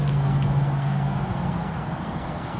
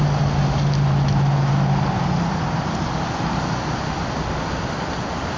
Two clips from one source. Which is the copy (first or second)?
first